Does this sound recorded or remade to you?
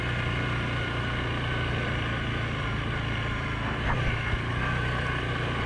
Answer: recorded